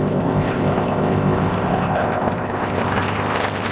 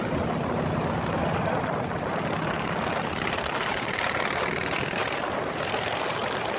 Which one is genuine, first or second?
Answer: second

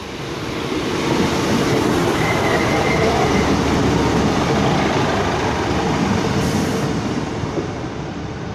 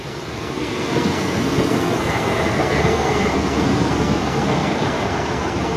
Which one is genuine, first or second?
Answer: first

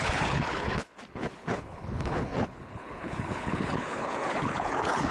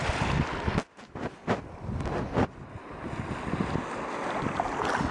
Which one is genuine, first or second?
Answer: second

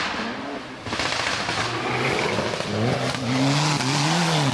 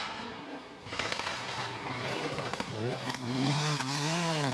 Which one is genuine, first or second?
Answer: first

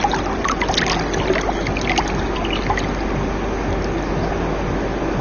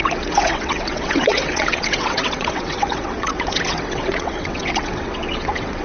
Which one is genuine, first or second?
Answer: first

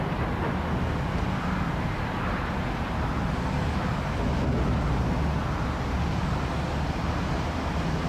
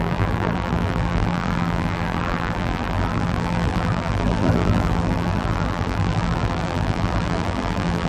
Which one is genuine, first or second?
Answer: first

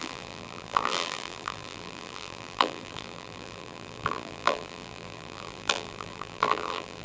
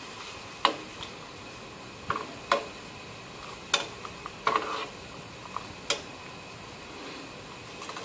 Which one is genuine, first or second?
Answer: second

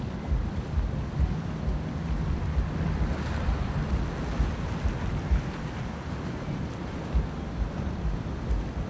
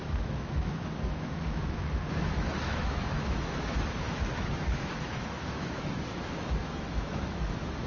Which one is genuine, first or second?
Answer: first